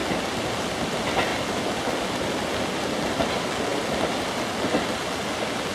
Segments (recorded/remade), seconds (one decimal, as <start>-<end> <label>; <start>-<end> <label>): 0.0-5.7 recorded